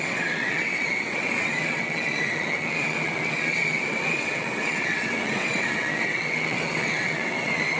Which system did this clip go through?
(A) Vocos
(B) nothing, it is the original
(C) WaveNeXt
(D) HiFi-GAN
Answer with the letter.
C